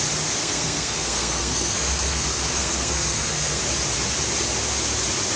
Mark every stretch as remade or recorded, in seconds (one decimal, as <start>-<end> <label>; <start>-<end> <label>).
0.0-0.4 recorded; 0.4-3.6 remade; 3.6-5.4 recorded